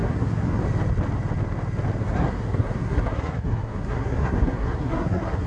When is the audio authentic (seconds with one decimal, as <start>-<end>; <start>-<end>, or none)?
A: 0.6-2.0